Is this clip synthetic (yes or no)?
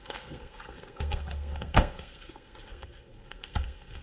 yes